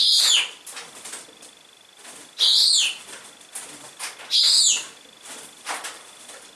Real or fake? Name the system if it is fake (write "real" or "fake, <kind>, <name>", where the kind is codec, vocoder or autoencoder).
real